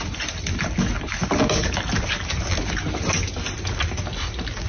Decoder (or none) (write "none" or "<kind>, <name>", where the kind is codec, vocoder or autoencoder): none